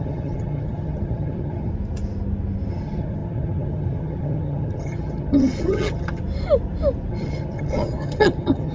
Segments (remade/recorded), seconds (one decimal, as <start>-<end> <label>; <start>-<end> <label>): 0.0-1.7 remade; 1.7-2.7 recorded; 2.7-6.2 remade; 6.2-7.1 recorded; 7.1-8.7 remade